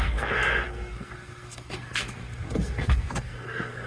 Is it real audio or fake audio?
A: fake